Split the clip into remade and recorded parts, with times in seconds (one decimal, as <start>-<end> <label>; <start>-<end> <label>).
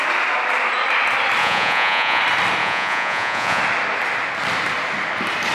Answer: 0.0-1.4 recorded; 1.4-2.2 remade; 2.2-2.6 recorded; 2.6-3.6 remade; 3.6-5.5 recorded